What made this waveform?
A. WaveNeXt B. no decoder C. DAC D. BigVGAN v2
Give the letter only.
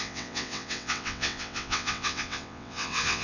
A